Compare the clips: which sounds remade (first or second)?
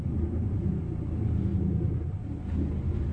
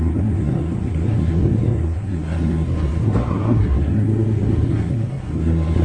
second